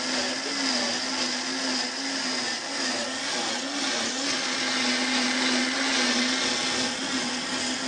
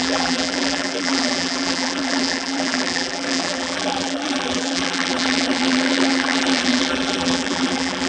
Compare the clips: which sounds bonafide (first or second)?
first